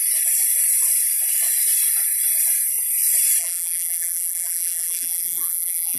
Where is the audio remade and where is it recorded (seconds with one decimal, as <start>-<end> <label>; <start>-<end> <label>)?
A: 0.0-3.4 recorded; 3.4-6.0 remade